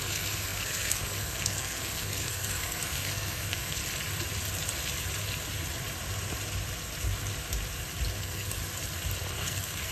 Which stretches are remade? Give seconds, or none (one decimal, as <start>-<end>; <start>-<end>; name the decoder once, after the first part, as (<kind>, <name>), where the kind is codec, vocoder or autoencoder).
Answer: 0.0-3.8 (codec, SNAC); 8.2-8.6; 9.3-9.9